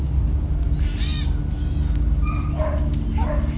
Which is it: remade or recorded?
recorded